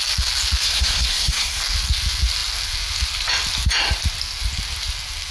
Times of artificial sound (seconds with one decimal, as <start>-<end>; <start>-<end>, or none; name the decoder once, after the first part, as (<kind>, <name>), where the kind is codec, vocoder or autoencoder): 0.6-1.6 (codec, SNAC)